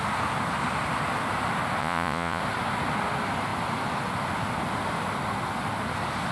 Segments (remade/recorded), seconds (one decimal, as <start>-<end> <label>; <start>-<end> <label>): 0.0-1.8 recorded; 1.8-2.4 remade; 2.4-6.3 recorded